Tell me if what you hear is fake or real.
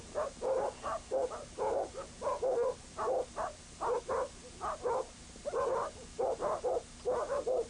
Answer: real